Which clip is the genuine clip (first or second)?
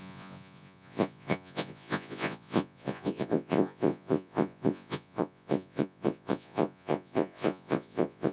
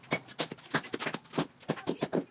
second